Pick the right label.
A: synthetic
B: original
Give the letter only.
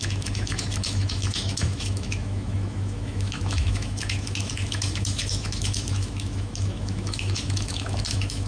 A